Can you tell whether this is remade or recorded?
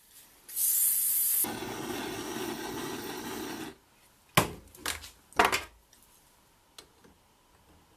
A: recorded